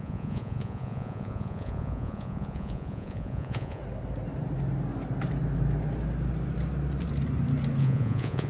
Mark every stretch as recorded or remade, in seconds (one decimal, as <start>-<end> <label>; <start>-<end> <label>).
0.0-3.8 remade; 3.8-7.8 recorded; 7.8-8.5 remade